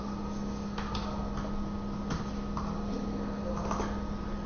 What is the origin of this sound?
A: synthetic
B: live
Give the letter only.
B